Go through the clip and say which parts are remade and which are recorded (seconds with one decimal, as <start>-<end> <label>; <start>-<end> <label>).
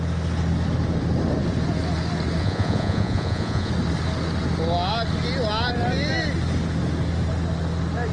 0.0-2.4 recorded; 2.4-3.7 remade; 3.7-8.1 recorded